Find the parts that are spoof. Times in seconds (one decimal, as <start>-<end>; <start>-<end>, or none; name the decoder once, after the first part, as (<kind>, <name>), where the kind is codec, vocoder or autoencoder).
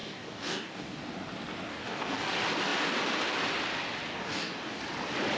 0.0-1.0 (codec, DAC); 1.7-2.3; 4.1-4.8